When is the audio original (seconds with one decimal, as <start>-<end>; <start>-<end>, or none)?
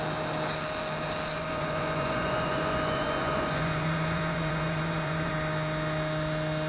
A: 0.0-1.3; 5.3-6.7